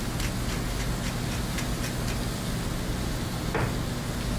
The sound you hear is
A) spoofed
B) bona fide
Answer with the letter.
B